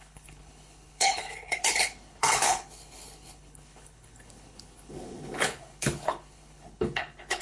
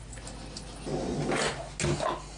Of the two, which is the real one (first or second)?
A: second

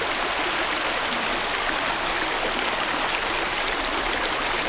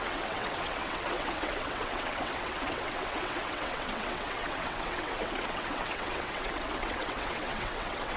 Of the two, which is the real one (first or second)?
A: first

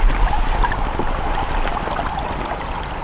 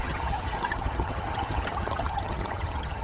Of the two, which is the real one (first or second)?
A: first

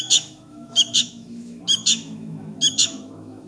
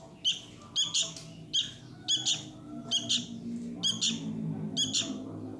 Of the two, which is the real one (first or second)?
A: second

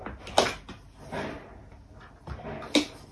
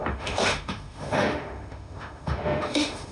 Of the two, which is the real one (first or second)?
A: first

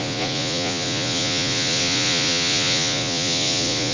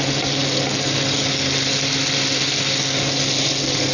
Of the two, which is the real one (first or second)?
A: second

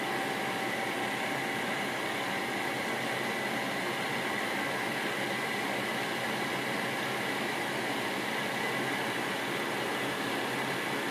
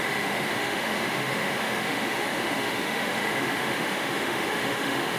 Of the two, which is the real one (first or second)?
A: first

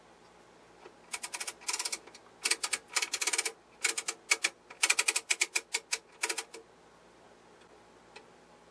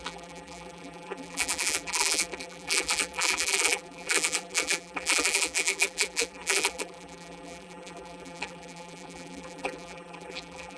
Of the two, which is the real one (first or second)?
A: first